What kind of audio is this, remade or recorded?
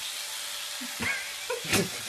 recorded